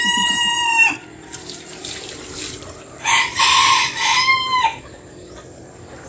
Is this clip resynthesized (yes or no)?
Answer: yes